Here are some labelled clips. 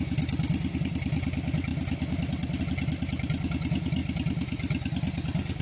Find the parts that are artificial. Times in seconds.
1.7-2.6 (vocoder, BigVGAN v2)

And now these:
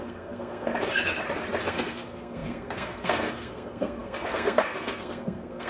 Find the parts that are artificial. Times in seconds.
0.0-0.7 (codec, SNAC); 1.7-5.7

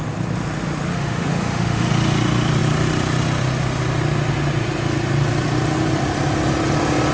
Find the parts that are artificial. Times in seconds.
0.9-1.9 (autoencoder, DAC-VAE)

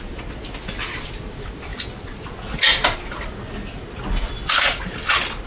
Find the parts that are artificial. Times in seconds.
none

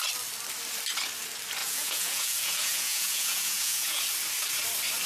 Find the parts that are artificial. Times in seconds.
1.6-4.0 (vocoder, Vocos)

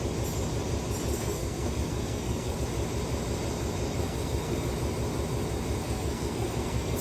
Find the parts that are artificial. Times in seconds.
1.1-2.6 (codec, SNAC); 4.0-4.7; 5.8-7.0